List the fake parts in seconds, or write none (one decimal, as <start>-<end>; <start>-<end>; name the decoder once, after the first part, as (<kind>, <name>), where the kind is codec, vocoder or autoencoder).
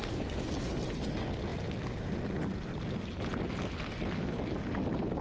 0.0-0.8 (codec, DAC)